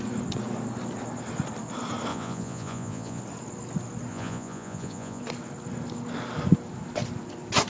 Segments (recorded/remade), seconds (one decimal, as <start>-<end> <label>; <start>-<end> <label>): 0.0-2.1 recorded; 2.1-3.2 remade; 3.2-4.1 recorded; 4.1-5.2 remade; 5.2-7.7 recorded